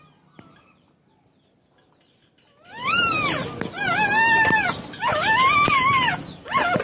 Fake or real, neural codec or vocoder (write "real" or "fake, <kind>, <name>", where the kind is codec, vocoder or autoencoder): real